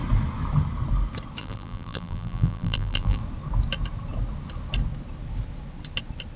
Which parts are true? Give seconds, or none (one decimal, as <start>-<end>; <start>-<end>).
0.0-1.4; 3.2-6.4